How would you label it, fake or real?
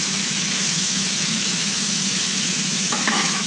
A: fake